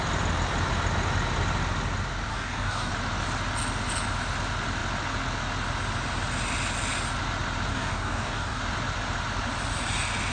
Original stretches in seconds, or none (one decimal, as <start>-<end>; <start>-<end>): 0.0-2.3; 2.9-7.7; 8.6-10.3